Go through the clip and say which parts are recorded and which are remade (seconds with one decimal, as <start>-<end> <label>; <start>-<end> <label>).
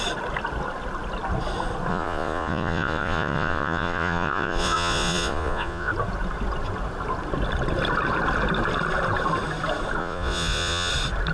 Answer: 0.0-1.9 recorded; 1.9-5.9 remade; 5.9-10.0 recorded; 10.0-10.9 remade; 10.9-11.3 recorded